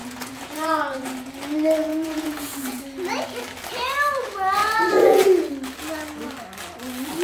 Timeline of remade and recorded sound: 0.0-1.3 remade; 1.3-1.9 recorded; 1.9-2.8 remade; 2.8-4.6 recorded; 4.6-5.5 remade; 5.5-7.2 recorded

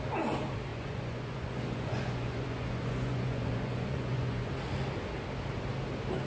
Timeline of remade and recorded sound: 0.0-0.7 recorded; 0.7-4.5 remade; 4.5-6.3 recorded

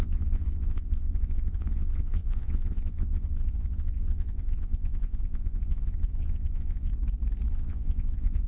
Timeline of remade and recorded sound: 0.0-6.9 remade; 6.9-7.5 recorded; 7.5-8.5 remade

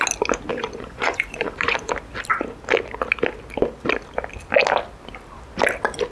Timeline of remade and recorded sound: 0.0-0.5 recorded; 0.5-1.9 remade; 1.9-6.1 recorded

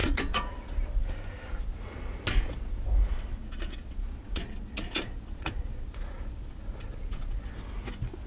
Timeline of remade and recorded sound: 0.0-0.9 remade; 0.9-3.4 recorded; 3.4-7.6 remade; 7.6-8.3 recorded

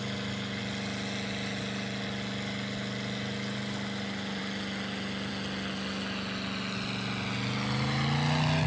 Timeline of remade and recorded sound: 0.0-8.7 recorded

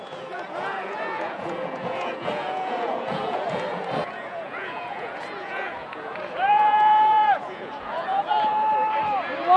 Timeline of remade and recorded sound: 0.0-8.5 remade; 8.5-9.6 recorded

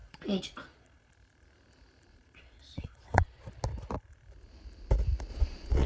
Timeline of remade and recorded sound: 0.0-1.1 remade; 1.1-2.1 recorded; 2.1-3.4 remade; 3.4-5.3 recorded; 5.3-5.9 remade